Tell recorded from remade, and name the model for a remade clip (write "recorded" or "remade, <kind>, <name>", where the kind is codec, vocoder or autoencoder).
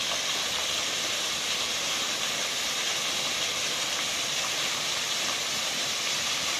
recorded